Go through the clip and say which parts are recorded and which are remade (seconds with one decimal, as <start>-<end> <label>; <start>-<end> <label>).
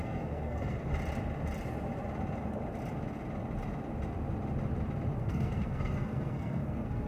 0.0-0.9 remade; 0.9-5.2 recorded; 5.2-7.1 remade